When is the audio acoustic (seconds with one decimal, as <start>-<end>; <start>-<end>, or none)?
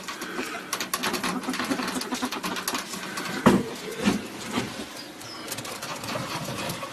0.0-6.9